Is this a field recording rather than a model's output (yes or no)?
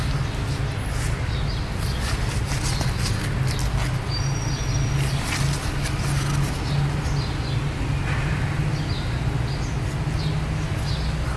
yes